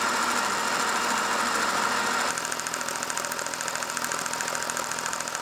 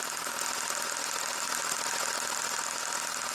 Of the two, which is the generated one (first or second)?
first